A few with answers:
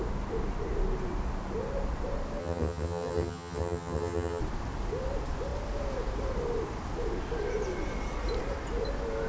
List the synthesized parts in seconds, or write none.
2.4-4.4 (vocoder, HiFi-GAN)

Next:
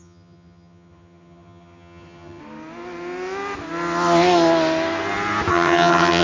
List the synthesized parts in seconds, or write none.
0.0-2.4 (vocoder, HiFi-GAN); 5.5-6.2

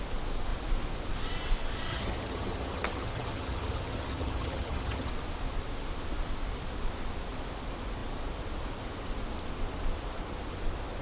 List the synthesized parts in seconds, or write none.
1.9-5.1 (vocoder, HiFi-GAN)

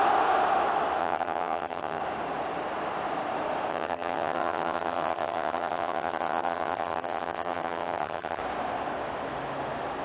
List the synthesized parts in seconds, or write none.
1.0-2.0 (vocoder, HiFi-GAN); 3.7-8.4

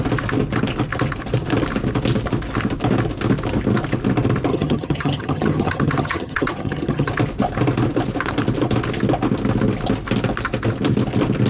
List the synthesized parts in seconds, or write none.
4.5-7.1 (vocoder, HiFi-GAN)